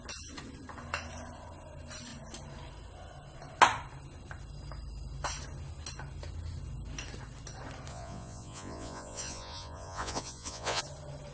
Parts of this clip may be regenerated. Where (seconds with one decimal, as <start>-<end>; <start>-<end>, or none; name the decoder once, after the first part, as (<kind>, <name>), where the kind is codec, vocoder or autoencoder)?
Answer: 7.9-10.8 (vocoder, Vocos)